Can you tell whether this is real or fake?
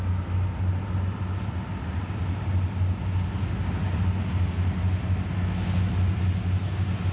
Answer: real